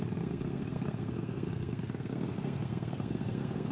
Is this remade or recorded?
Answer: remade